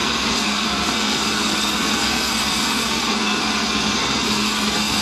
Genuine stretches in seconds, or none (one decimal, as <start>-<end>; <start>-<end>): none